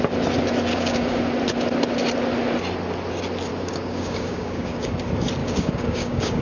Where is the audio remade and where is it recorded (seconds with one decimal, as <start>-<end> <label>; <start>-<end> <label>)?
0.0-0.7 recorded; 0.7-1.2 remade; 1.2-3.5 recorded; 3.5-4.9 remade; 4.9-5.4 recorded; 5.4-6.4 remade